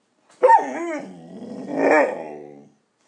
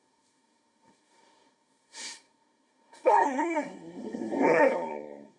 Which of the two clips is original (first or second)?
first